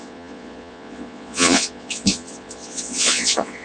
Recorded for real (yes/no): no